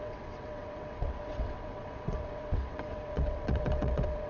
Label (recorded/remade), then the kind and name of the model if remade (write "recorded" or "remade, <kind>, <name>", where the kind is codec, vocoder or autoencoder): remade, vocoder, WaveNeXt